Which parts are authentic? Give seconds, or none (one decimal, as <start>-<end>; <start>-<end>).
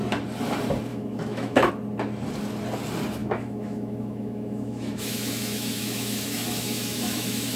0.0-0.9; 1.7-3.2